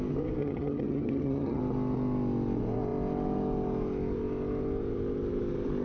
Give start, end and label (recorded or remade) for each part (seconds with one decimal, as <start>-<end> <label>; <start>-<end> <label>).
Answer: 0.0-0.4 recorded; 0.4-1.6 remade; 1.6-5.8 recorded